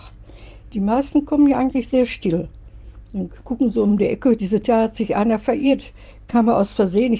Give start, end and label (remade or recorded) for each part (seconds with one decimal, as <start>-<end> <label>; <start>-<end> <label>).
0.0-5.6 recorded; 5.6-6.3 remade; 6.3-7.2 recorded